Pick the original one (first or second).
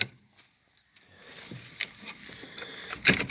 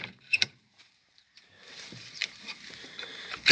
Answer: first